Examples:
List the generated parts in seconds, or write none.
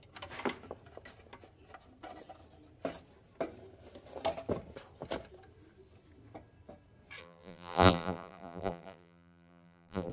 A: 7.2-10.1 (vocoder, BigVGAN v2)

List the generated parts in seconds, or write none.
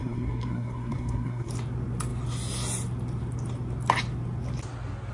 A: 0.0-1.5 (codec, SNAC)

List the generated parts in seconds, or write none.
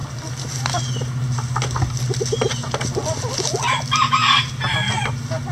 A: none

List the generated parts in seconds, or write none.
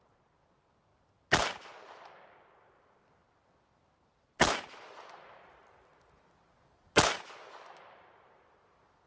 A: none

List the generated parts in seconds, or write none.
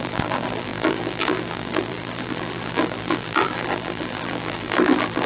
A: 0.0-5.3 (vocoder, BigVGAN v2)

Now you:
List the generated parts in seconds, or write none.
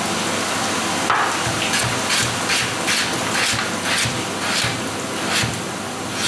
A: none